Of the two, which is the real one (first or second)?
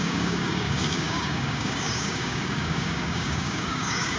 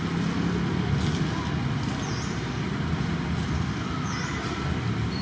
second